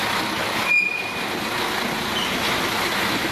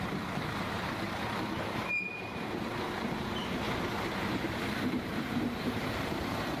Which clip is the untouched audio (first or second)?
first